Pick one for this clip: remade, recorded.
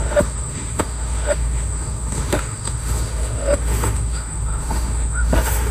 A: remade